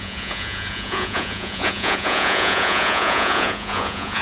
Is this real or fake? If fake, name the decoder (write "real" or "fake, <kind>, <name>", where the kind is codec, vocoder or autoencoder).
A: fake, vocoder, Vocos